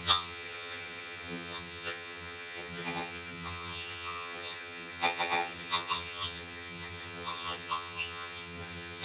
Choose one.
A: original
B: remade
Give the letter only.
B